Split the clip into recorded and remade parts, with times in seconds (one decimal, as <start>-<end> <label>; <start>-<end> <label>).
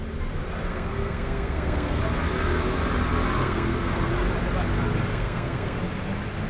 0.0-0.7 recorded; 0.7-2.0 remade; 2.0-3.4 recorded; 3.4-4.1 remade; 4.1-5.1 recorded; 5.1-5.8 remade; 5.8-6.5 recorded